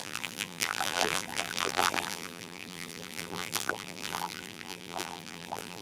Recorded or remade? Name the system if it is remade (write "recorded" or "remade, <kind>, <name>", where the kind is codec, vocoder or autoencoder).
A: remade, vocoder, BigVGAN v2